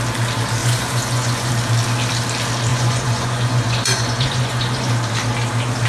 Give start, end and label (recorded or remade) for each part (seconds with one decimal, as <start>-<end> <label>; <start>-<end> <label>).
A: 0.0-0.6 recorded; 0.6-1.5 remade; 1.5-2.7 recorded; 2.7-4.9 remade; 4.9-5.9 recorded